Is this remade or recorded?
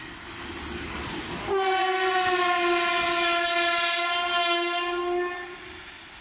recorded